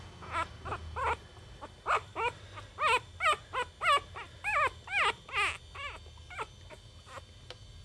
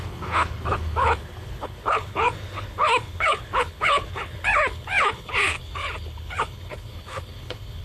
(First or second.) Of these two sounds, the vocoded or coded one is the second